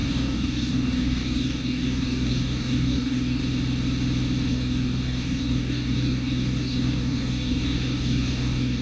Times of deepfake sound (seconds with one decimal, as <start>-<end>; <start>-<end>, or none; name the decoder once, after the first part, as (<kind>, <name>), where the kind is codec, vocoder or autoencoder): 0.0-3.4 (codec, DAC); 4.5-8.8